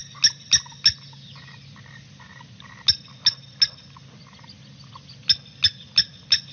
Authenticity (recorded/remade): recorded